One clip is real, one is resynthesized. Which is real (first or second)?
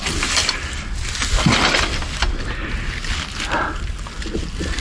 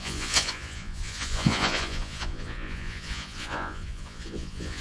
first